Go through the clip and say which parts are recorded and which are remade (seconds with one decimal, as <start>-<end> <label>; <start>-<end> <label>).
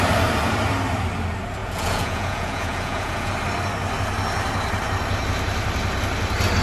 0.0-1.6 recorded; 1.6-3.3 remade; 3.3-6.6 recorded